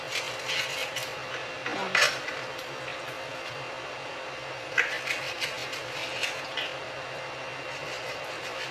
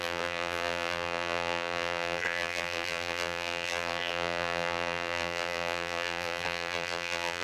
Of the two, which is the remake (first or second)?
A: second